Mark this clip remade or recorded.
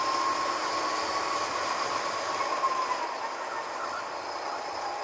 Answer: recorded